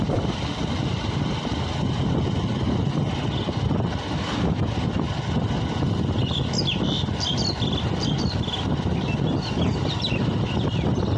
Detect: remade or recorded recorded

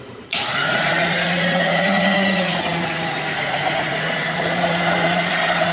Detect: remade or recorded remade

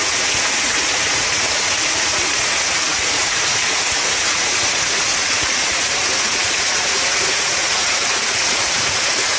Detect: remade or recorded remade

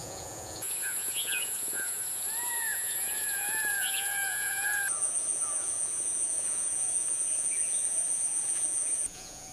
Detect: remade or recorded remade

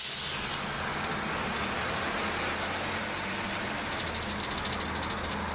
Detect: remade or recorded recorded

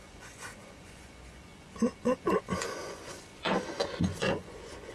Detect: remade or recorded remade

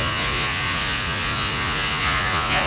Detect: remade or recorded remade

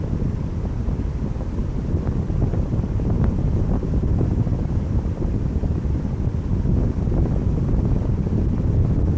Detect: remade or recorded recorded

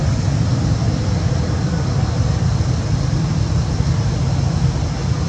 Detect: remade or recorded recorded